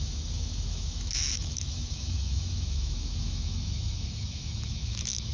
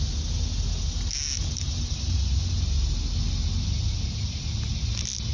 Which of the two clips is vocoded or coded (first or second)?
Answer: first